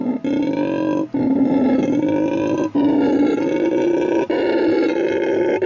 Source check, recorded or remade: recorded